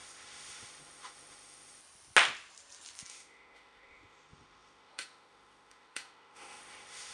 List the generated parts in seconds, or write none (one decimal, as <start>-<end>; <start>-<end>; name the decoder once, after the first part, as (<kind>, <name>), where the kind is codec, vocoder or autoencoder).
0.0-1.8 (autoencoder, DAC-VAE); 3.1-7.1